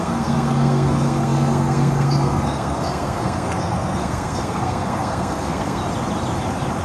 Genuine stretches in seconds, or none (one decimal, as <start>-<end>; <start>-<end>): 5.8-6.8